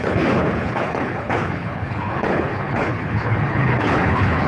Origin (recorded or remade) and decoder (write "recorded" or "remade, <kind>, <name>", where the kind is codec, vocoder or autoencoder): remade, codec, HILCodec